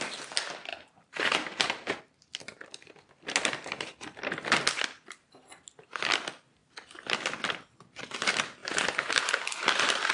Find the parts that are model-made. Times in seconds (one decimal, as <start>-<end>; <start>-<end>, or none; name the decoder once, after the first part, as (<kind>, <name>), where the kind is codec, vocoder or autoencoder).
0.7-2.0 (vocoder, BigVGAN v2); 8.6-9.2